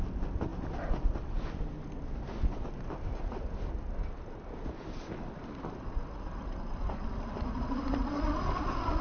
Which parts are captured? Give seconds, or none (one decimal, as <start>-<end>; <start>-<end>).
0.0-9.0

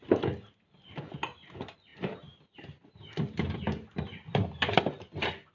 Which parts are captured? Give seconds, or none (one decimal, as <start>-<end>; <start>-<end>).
none

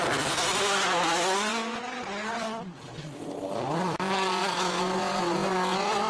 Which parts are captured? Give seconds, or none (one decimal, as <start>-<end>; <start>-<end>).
0.0-6.1

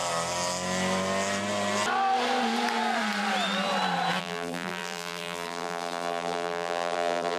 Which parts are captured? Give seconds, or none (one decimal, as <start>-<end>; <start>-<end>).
0.0-4.2